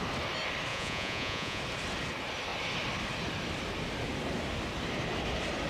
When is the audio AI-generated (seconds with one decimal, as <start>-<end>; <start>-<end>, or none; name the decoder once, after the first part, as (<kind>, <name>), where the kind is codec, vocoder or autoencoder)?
0.7-1.6 (vocoder, Vocos)